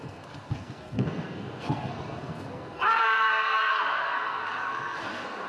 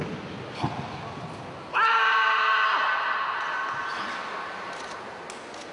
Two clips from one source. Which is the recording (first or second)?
second